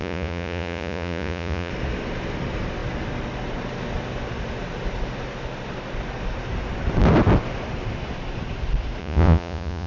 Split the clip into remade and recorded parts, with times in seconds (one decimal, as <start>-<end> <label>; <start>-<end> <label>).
0.0-1.7 remade; 1.7-9.0 recorded; 9.0-9.9 remade